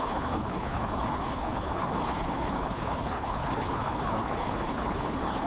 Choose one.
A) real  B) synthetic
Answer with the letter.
B